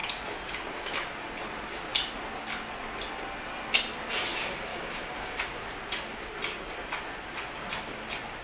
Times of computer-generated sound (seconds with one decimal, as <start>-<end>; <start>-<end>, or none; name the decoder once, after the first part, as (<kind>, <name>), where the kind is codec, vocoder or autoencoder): 4.7-5.4 (codec, DAC)